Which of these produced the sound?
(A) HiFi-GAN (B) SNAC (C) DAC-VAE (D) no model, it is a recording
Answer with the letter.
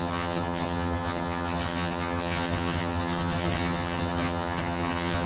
A